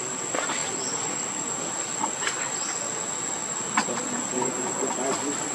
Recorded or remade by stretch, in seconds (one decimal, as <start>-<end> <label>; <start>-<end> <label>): 0.0-5.5 recorded